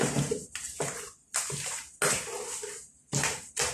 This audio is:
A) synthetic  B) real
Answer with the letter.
B